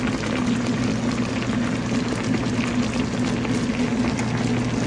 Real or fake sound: real